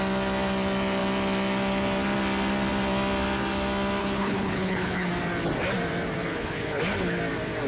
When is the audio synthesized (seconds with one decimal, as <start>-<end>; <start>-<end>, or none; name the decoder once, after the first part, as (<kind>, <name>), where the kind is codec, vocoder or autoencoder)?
4.0-5.1 (codec, HILCodec); 6.2-7.2